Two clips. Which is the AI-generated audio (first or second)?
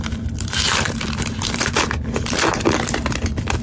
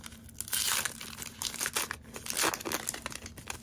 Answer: first